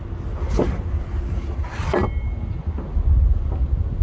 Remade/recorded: recorded